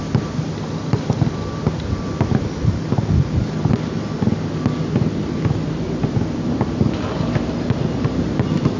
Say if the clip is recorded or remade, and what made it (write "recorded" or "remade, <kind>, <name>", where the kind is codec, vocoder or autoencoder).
recorded